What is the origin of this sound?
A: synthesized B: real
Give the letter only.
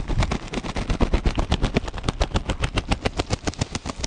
B